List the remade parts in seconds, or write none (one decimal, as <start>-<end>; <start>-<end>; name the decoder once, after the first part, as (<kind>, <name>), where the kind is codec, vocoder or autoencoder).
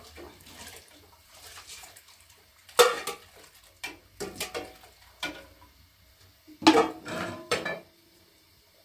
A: 0.0-2.6 (vocoder, BigVGAN v2); 6.7-8.8